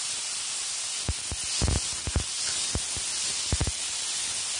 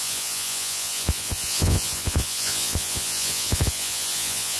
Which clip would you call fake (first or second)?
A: second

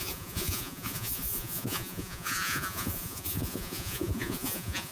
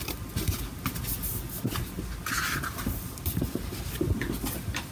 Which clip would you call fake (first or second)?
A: first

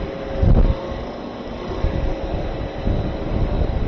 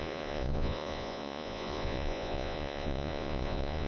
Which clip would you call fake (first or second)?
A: second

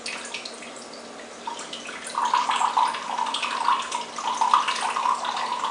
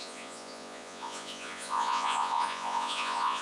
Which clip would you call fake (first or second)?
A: second